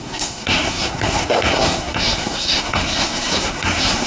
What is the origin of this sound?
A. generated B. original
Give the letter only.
A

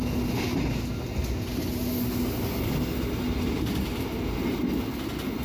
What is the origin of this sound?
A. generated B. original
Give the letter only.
B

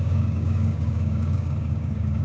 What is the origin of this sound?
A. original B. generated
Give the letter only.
B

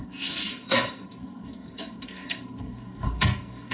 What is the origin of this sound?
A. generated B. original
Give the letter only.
A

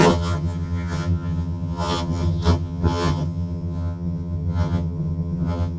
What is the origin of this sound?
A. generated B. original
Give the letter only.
A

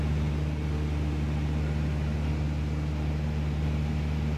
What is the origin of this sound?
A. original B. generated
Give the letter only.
A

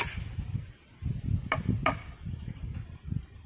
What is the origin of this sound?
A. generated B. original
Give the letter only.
B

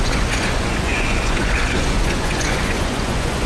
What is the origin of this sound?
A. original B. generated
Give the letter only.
B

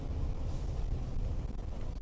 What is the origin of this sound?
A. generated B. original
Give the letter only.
B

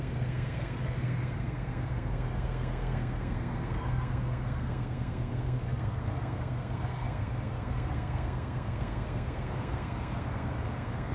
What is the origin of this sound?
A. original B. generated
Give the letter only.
B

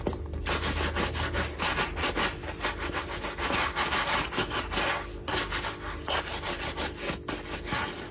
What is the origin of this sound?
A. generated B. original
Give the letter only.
B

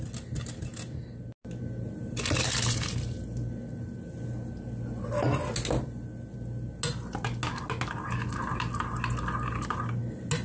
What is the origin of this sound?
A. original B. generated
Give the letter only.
A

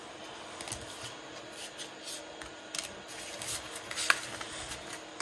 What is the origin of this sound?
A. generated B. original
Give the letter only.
B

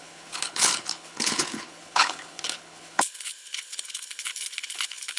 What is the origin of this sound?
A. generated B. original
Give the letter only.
A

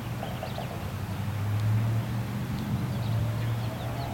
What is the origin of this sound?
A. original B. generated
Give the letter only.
A